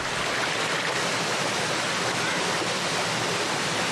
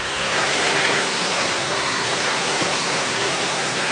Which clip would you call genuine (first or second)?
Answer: first